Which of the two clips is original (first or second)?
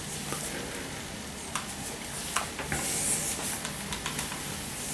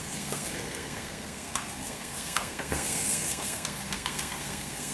first